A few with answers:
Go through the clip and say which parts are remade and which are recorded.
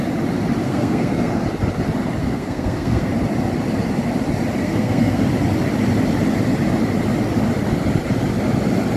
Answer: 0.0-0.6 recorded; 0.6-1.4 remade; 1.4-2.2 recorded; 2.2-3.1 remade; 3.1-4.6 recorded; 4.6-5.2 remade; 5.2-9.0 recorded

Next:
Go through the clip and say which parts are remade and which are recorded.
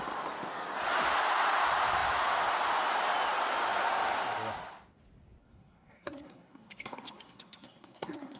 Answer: 0.0-5.4 recorded; 5.4-8.4 remade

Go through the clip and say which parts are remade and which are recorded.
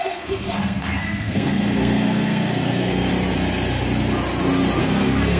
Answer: 0.0-3.1 remade; 3.1-4.8 recorded; 4.8-5.4 remade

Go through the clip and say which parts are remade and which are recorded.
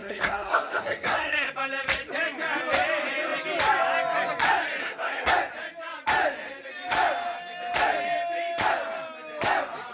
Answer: 0.0-1.5 remade; 1.5-4.8 recorded; 4.8-5.3 remade; 5.3-9.9 recorded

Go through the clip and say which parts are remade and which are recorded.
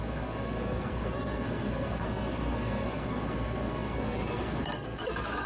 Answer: 0.0-5.5 remade